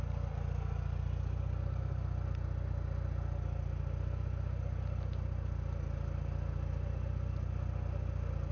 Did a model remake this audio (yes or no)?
no